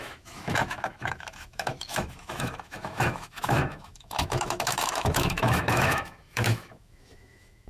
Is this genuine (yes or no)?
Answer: no